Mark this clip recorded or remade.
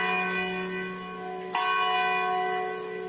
recorded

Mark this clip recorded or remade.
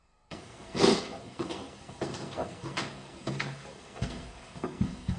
remade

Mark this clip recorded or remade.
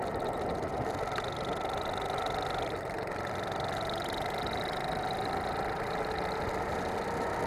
recorded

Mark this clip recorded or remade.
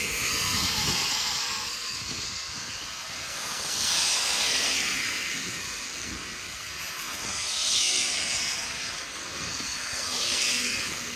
remade